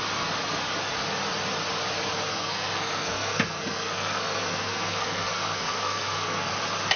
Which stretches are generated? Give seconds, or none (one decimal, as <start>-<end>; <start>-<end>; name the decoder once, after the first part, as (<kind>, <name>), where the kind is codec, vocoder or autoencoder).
2.3-6.5 (codec, SNAC)